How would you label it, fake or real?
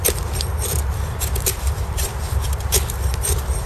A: fake